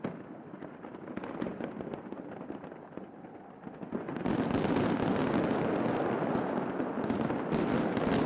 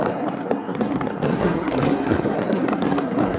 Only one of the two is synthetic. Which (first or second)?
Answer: second